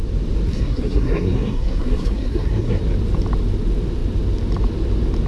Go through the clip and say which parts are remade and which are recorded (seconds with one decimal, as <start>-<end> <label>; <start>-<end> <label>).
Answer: 0.0-0.5 recorded; 0.5-2.8 remade; 2.8-5.3 recorded